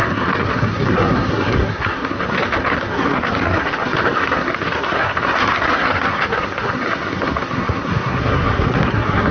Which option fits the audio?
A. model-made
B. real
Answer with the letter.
A